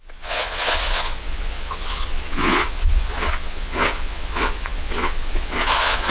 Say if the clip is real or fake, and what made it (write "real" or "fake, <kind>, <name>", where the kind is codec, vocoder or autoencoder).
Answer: fake, vocoder, Vocos